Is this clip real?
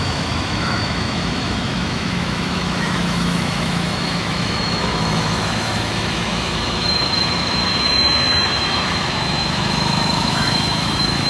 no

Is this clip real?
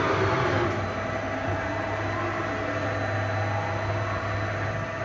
yes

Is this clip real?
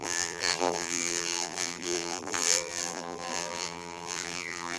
no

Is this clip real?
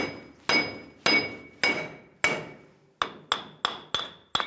yes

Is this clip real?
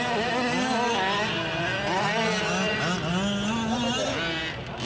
yes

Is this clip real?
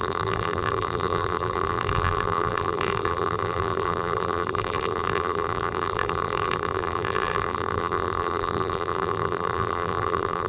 no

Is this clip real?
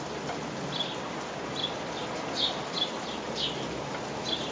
yes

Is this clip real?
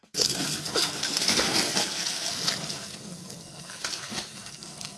no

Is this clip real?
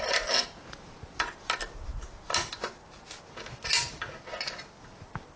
yes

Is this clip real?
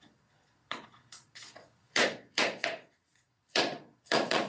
no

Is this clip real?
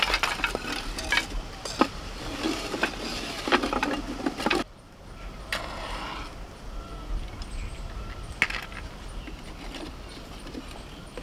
yes